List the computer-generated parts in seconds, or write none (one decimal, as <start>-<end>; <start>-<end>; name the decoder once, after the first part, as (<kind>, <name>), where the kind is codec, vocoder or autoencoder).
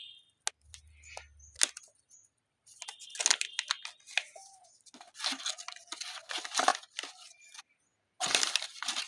none